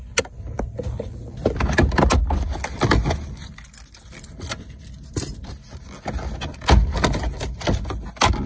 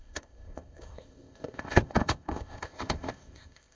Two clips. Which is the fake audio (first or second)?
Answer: second